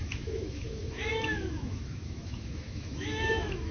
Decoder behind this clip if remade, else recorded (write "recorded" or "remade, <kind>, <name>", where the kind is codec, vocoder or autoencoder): remade, autoencoder, DAC-VAE